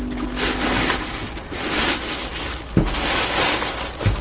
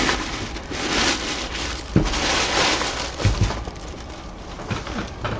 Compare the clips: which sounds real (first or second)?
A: first